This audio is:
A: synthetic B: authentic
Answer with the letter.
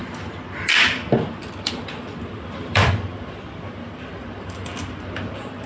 A